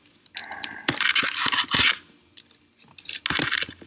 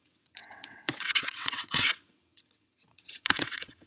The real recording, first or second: first